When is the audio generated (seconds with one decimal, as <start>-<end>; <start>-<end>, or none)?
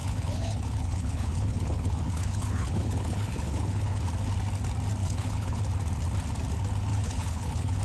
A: 0.0-4.0; 5.0-5.6; 6.9-7.8